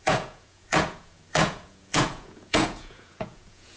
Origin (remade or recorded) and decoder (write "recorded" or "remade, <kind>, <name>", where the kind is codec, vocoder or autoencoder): remade, vocoder, Vocos